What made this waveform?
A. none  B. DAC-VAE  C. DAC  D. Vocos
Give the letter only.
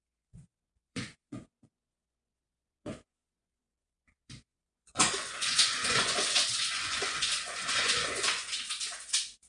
D